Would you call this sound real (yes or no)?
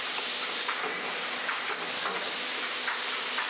yes